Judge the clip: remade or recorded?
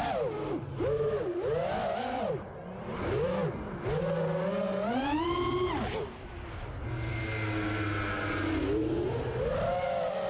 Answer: recorded